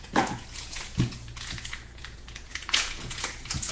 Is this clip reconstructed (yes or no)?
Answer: yes